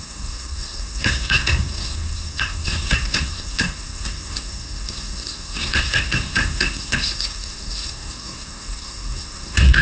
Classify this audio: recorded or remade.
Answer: remade